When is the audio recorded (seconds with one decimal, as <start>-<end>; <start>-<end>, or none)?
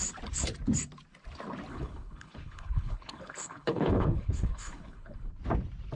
0.0-1.7; 5.3-6.0